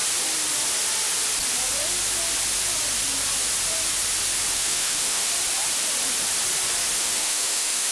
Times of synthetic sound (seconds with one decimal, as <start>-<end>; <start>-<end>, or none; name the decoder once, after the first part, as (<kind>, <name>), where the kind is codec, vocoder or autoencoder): 4.5-5.3 (autoencoder, DAC-VAE); 7.0-7.9